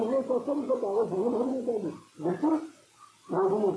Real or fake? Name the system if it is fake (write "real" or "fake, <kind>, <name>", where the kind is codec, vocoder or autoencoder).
real